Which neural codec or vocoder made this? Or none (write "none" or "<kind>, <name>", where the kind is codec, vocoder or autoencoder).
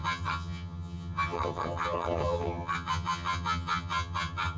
vocoder, HiFi-GAN